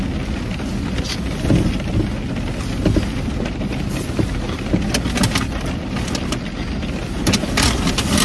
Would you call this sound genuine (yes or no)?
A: yes